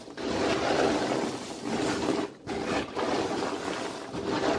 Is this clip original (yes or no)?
yes